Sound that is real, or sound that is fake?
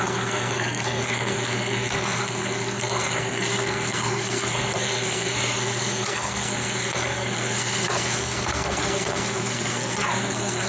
fake